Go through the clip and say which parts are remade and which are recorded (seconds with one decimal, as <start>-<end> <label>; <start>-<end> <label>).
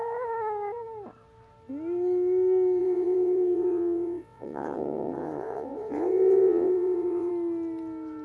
0.0-2.8 recorded; 2.8-7.3 remade; 7.3-8.2 recorded